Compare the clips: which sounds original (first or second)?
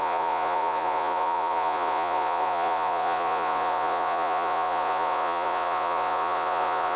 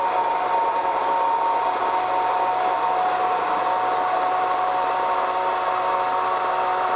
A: second